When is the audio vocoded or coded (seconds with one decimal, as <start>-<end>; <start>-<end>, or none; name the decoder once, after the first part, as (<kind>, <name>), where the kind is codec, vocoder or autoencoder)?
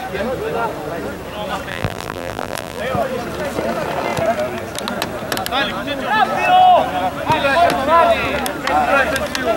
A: 1.7-2.8 (vocoder, BigVGAN v2)